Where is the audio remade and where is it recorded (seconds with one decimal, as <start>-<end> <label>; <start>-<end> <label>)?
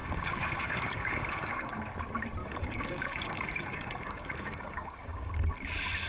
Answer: 0.0-1.7 remade; 1.7-2.4 recorded; 2.4-5.3 remade; 5.3-6.1 recorded